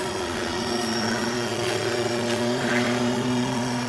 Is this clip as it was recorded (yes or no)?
no